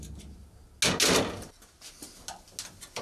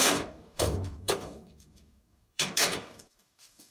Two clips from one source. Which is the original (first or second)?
first